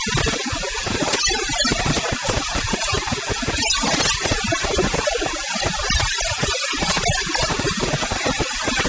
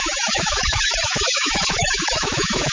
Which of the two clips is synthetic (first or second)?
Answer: second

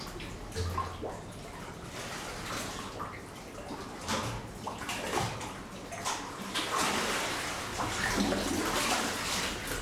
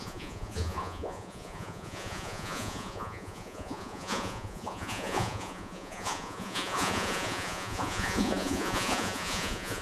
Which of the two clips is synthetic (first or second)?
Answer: second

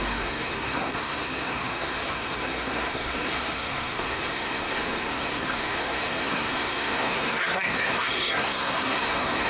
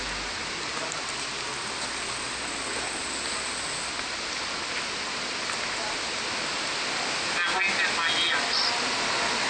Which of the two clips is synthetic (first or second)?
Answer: first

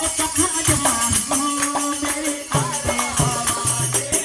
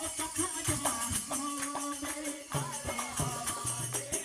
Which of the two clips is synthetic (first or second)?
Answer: second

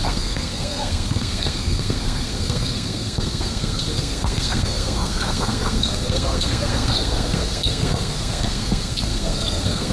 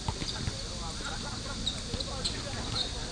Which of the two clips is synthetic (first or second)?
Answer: first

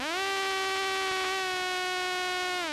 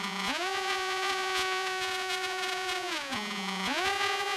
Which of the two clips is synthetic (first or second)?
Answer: second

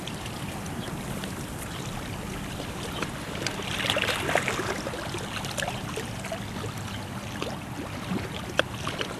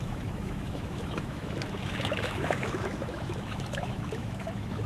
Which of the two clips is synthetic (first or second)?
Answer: second